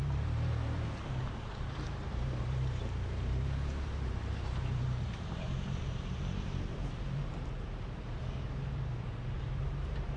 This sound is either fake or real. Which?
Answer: fake